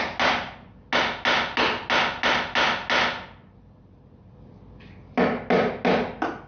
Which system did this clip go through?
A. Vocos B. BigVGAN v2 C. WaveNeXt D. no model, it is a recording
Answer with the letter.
D